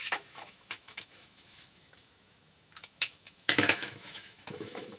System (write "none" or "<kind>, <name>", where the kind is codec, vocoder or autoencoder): autoencoder, DAC-VAE